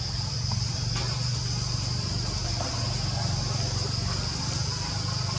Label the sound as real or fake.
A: real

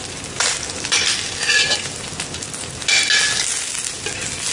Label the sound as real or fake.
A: real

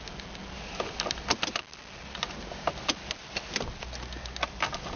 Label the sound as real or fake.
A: real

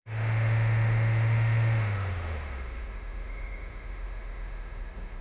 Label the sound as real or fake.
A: fake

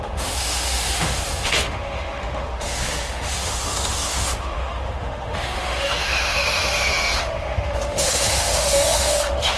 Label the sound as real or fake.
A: fake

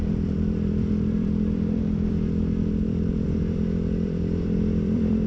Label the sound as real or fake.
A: fake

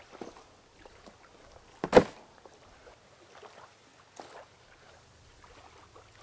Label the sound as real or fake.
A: real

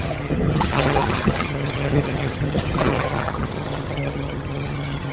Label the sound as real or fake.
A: fake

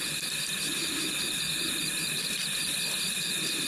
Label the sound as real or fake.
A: real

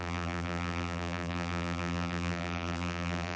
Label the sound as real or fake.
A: fake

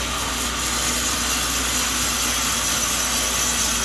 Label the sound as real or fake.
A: real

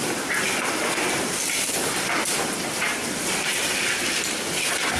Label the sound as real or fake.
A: real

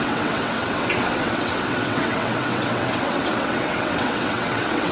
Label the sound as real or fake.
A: fake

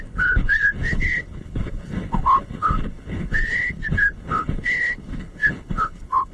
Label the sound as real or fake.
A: fake